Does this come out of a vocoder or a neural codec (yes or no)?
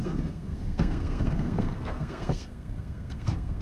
yes